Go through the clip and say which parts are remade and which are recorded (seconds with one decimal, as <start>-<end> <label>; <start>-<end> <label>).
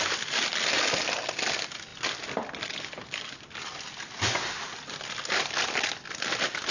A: 0.0-1.9 recorded; 1.9-5.9 remade; 5.9-6.7 recorded